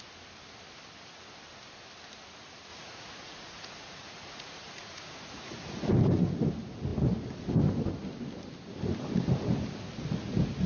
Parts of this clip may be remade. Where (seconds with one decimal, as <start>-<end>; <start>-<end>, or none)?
2.7-5.9